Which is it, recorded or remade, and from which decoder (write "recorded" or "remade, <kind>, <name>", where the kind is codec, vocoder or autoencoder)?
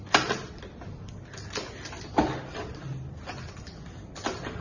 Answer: recorded